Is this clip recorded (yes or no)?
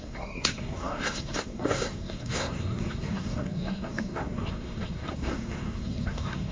no